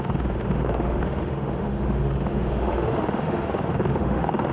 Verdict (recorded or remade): remade